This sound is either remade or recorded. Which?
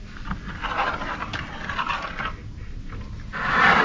recorded